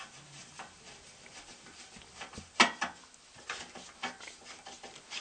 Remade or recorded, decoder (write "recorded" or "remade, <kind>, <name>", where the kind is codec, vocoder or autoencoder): recorded